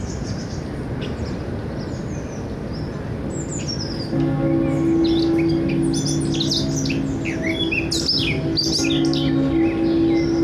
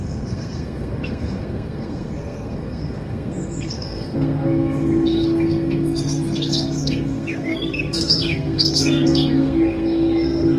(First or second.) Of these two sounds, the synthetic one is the second